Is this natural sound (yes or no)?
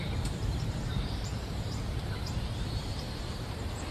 no